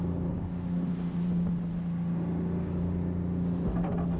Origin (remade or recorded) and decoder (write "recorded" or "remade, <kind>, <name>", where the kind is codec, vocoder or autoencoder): recorded